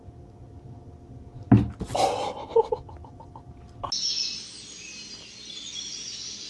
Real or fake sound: real